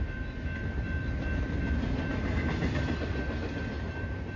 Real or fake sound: real